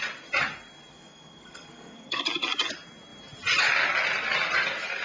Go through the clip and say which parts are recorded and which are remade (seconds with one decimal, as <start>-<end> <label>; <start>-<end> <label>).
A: 0.0-0.9 recorded; 0.9-2.2 remade; 2.2-5.0 recorded